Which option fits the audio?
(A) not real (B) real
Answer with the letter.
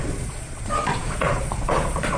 A